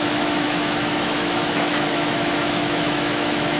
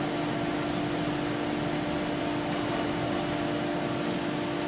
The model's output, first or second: first